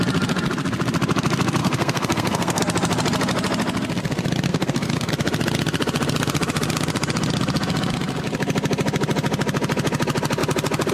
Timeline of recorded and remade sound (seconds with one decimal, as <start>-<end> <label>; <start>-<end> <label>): 0.0-1.6 recorded; 1.6-2.6 remade; 2.6-4.5 recorded; 4.5-5.1 remade; 5.1-10.9 recorded